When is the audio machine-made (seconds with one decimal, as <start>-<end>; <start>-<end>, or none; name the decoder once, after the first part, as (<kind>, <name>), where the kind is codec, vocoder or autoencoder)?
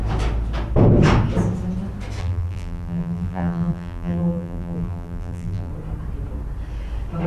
2.2-5.7 (vocoder, BigVGAN v2)